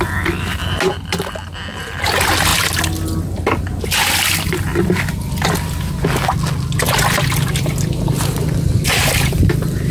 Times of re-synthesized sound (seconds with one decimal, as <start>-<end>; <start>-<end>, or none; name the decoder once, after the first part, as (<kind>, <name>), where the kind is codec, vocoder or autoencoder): none